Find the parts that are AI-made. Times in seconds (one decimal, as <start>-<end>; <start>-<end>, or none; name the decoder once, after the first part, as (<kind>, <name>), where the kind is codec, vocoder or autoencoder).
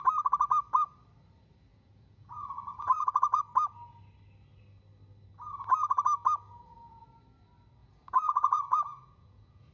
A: 1.7-3.4 (vocoder, Vocos); 7.8-9.7